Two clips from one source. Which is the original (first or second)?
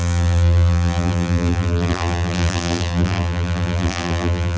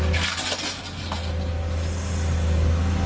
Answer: second